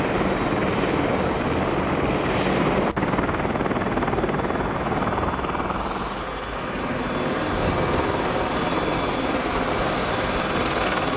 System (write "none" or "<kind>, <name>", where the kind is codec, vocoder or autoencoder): none